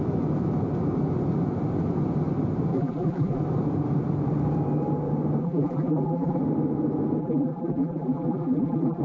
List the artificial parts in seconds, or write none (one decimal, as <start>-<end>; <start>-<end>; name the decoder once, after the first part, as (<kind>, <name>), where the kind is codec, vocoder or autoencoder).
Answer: 2.7-3.4 (vocoder, BigVGAN v2); 5.4-6.4; 7.2-9.0